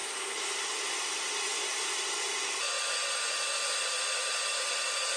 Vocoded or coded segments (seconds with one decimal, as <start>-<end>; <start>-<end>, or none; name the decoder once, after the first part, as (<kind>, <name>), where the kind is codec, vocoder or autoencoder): 0.0-0.8 (vocoder, BigVGAN v2)